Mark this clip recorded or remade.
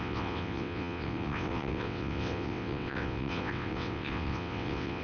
remade